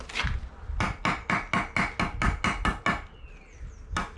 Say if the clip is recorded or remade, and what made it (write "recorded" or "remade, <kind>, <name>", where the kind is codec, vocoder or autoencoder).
recorded